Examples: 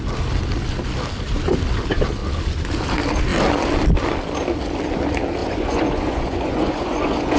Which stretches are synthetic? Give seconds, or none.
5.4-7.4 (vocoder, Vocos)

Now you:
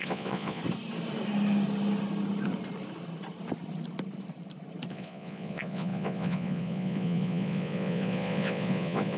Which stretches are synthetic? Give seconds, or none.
0.0-0.6 (vocoder, Vocos); 4.9-9.2

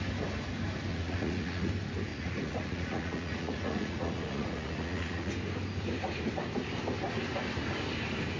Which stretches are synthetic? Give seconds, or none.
0.9-1.7 (vocoder, Vocos); 2.1-5.3

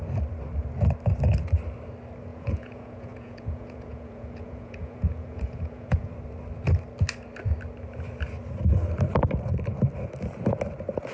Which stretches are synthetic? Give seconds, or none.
2.3-6.1 (vocoder, Vocos)